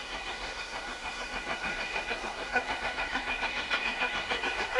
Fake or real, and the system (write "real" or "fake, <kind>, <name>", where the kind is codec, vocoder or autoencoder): fake, codec, SNAC